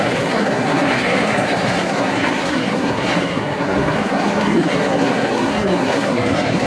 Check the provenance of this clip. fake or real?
fake